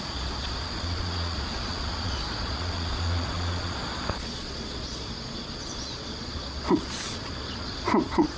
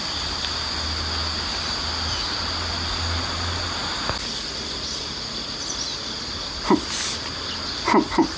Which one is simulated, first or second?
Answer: first